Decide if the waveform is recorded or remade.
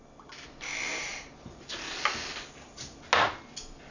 recorded